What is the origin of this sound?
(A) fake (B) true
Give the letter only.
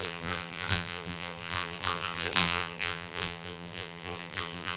A